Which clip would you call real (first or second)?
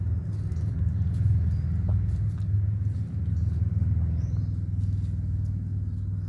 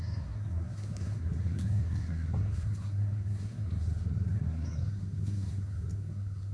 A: first